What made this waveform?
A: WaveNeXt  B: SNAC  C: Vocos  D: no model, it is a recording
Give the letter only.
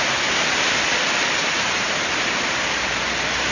D